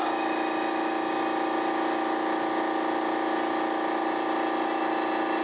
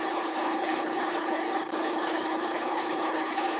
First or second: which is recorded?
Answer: first